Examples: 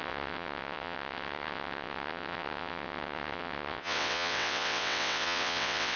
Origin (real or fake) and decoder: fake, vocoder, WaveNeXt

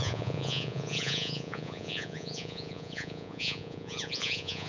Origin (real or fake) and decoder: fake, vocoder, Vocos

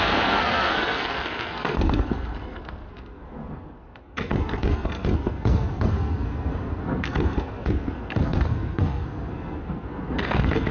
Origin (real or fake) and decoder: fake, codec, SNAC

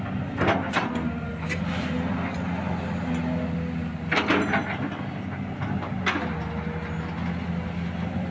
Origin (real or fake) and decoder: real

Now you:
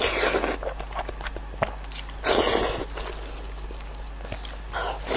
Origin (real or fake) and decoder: real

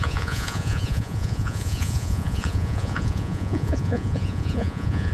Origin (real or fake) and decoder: fake, vocoder, Vocos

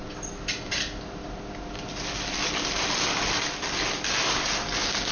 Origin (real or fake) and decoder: real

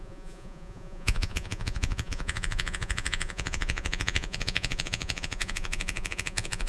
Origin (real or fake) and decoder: fake, vocoder, Vocos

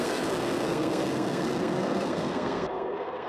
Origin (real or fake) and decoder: fake, codec, SNAC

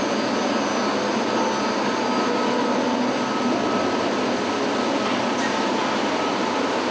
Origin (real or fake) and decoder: real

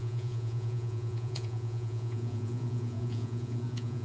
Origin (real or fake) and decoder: fake, vocoder, Vocos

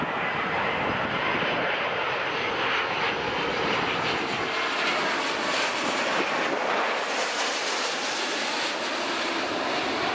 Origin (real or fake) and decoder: real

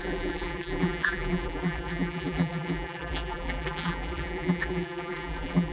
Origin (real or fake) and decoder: fake, vocoder, BigVGAN v2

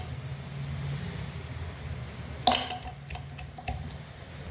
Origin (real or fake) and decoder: real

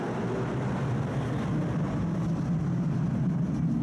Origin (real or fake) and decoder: real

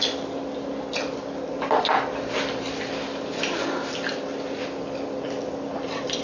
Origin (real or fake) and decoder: real